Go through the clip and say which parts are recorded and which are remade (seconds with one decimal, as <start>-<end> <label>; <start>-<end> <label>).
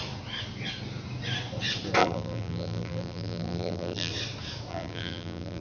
0.0-2.0 recorded; 2.0-4.1 remade; 4.1-4.7 recorded; 4.7-5.6 remade